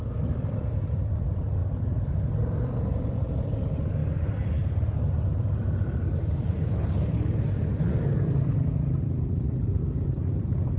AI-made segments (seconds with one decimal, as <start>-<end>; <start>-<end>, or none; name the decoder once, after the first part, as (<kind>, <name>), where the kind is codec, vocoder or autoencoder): 0.0-1.6 (vocoder, BigVGAN v2); 2.1-4.0; 9.0-10.8